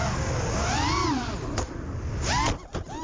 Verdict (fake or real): real